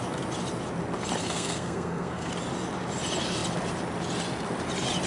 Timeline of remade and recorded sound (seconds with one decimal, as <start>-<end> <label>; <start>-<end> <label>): 0.0-1.2 recorded; 1.2-2.3 remade; 2.3-5.1 recorded